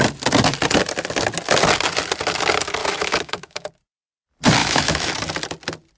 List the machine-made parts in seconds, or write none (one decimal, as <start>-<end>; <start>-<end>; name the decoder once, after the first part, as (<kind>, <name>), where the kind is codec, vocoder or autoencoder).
2.8-3.7 (autoencoder, DAC-VAE); 4.6-5.1